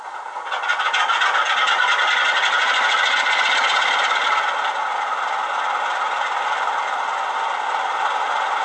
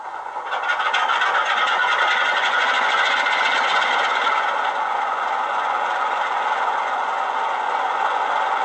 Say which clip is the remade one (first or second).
second